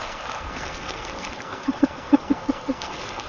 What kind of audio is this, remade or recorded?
remade